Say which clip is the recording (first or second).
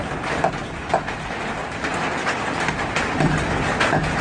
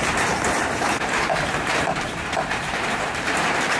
first